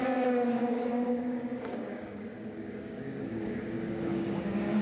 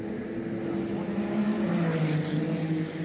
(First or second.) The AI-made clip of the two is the first